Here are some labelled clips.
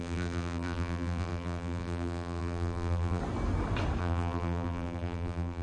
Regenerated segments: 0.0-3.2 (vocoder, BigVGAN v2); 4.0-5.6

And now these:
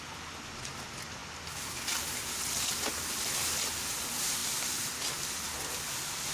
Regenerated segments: 4.4-4.9 (vocoder, BigVGAN v2)

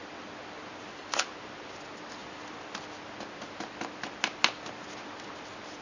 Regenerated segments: none

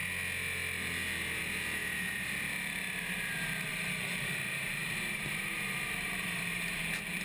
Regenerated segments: 3.7-6.8 (vocoder, BigVGAN v2)